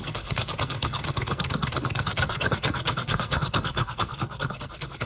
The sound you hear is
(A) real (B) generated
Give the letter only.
B